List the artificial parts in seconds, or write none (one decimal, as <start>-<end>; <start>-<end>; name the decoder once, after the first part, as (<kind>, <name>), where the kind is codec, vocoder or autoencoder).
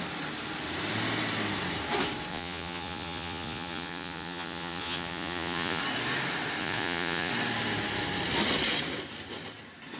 2.3-5.8 (vocoder, Vocos); 6.6-7.3